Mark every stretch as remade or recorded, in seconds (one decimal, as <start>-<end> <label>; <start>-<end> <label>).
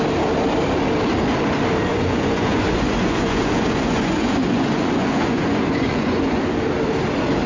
0.0-1.9 recorded; 1.9-6.4 remade; 6.4-7.5 recorded